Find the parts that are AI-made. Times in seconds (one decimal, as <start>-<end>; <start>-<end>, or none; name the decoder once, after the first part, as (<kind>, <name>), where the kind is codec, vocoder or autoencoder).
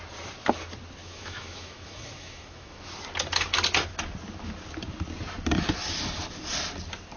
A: 1.0-3.0 (autoencoder, DAC-VAE)